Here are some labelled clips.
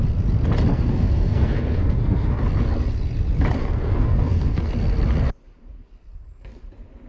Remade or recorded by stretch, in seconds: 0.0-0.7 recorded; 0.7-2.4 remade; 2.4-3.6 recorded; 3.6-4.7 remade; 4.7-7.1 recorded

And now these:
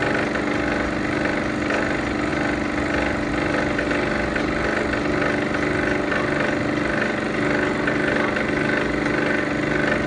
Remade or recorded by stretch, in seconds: 0.0-10.1 recorded